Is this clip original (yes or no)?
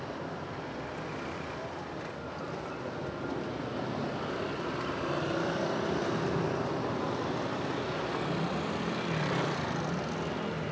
yes